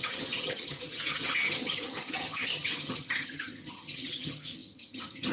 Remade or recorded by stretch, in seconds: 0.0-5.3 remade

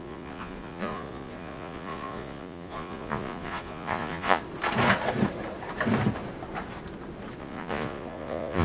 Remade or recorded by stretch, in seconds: 0.0-4.4 remade; 4.4-7.4 recorded; 7.4-8.6 remade

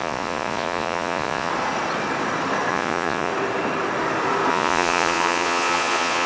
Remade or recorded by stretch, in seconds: 0.0-1.5 remade; 1.5-2.7 recorded; 2.7-3.3 remade; 3.3-4.5 recorded; 4.5-6.3 remade

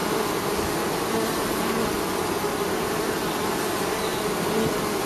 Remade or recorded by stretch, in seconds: 0.0-5.1 recorded

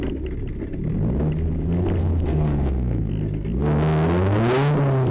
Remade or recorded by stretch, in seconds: 0.0-2.0 recorded; 2.0-3.1 remade; 3.1-5.1 recorded

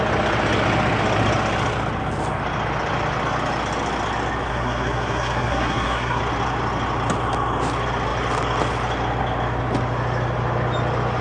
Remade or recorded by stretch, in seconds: 0.0-4.5 recorded; 4.5-6.2 remade; 6.2-11.2 recorded